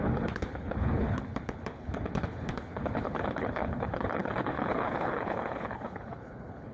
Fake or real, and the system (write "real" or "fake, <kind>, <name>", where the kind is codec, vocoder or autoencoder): fake, codec, HILCodec